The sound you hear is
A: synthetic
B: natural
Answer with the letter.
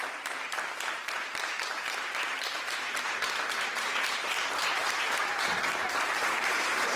A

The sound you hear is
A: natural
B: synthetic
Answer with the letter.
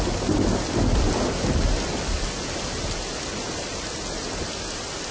A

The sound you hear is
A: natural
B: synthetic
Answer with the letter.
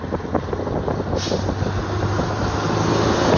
A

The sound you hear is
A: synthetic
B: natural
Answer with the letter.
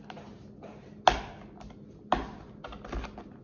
B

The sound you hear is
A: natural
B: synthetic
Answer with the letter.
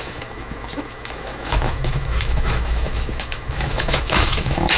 B